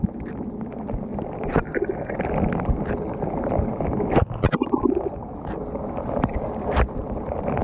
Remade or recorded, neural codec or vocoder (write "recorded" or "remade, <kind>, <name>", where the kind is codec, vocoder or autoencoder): remade, vocoder, BigVGAN v2